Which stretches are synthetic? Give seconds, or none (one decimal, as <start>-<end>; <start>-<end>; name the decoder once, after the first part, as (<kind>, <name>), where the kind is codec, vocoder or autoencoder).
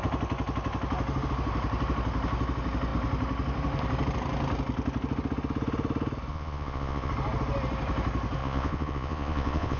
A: 6.3-7.1 (vocoder, Vocos); 8.4-9.8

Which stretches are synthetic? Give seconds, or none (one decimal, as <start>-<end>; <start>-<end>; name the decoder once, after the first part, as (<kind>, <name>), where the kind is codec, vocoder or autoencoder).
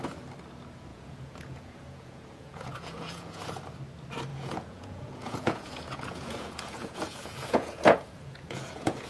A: 0.9-3.4 (vocoder, Vocos); 4.3-9.1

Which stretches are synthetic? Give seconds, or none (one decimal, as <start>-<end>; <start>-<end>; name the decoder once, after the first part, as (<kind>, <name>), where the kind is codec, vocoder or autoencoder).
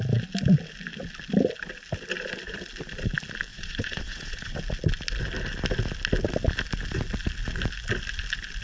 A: 3.5-4.5 (vocoder, Vocos)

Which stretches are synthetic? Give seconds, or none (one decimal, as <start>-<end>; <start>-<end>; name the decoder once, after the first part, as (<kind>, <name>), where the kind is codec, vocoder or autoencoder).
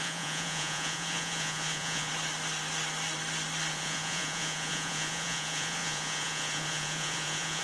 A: 0.0-2.1 (vocoder, Vocos); 3.7-7.6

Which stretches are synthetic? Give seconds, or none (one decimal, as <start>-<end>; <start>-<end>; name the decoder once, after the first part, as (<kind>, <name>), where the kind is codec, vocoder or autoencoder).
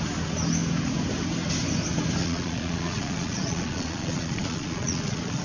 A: 2.2-5.4 (vocoder, Vocos)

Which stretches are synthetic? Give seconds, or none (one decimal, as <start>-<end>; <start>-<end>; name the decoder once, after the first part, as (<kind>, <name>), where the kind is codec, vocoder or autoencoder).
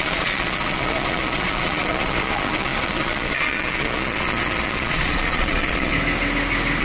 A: 0.0-5.9 (vocoder, Vocos)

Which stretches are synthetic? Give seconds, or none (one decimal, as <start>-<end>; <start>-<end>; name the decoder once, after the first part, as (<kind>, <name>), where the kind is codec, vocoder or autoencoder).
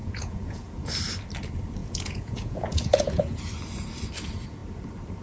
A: 0.0-0.9 (vocoder, Vocos); 1.8-3.4